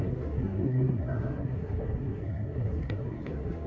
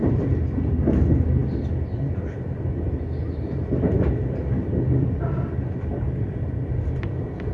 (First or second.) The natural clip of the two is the second